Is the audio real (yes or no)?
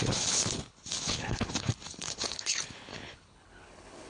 no